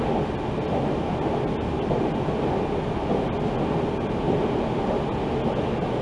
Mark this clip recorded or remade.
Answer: recorded